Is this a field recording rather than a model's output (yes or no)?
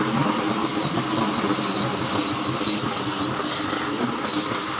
yes